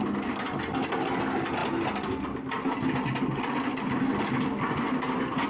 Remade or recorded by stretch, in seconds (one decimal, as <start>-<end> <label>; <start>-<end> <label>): 0.0-5.5 recorded